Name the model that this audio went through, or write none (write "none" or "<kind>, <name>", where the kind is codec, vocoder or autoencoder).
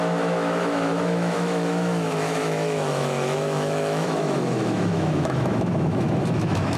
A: autoencoder, DAC-VAE